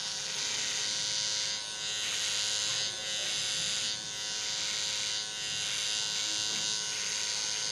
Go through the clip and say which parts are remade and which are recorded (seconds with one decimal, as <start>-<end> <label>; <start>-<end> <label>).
0.0-7.7 recorded